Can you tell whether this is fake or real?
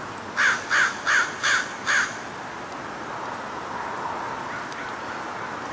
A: real